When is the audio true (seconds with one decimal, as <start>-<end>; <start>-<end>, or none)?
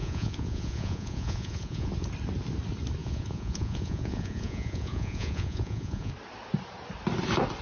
1.9-3.0; 6.1-7.6